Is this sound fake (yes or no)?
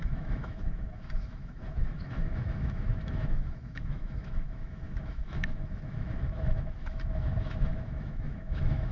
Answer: yes